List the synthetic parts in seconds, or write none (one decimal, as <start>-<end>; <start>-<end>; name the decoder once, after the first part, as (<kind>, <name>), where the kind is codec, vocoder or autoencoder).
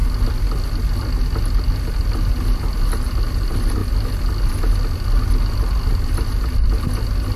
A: none